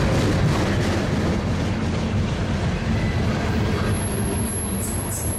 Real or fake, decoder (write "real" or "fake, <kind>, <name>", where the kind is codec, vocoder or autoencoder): real